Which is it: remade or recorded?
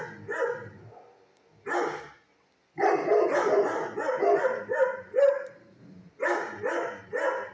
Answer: recorded